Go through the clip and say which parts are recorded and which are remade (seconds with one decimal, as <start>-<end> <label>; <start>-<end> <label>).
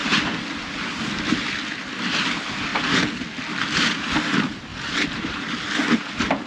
0.0-4.7 recorded; 4.7-5.8 remade; 5.8-6.5 recorded